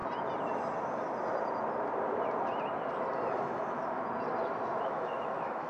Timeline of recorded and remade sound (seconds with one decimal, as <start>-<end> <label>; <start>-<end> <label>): 0.0-3.4 recorded; 3.4-4.0 remade; 4.0-4.8 recorded; 4.8-5.7 remade